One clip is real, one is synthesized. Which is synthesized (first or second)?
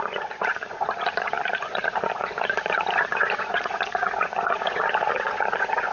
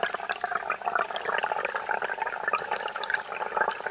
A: first